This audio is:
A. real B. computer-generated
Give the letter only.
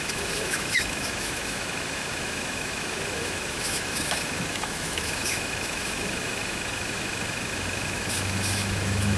B